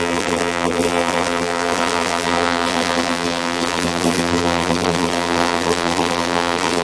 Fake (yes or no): yes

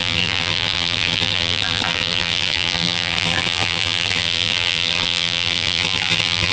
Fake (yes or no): yes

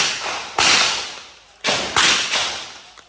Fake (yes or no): no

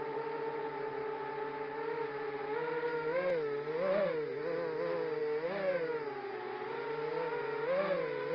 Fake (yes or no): no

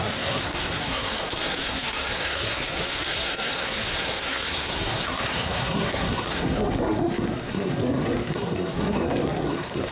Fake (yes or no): yes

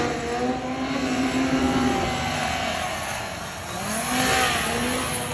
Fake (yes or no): no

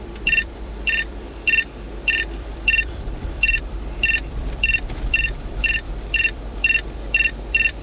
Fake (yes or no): yes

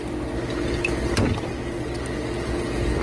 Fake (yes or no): no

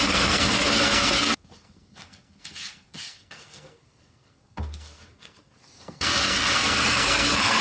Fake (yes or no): yes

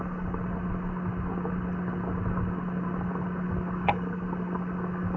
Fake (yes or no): no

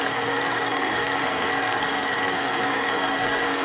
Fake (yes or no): yes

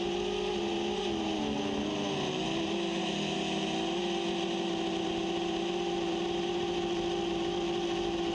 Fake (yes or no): no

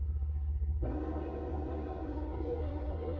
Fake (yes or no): yes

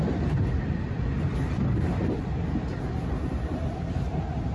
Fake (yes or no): yes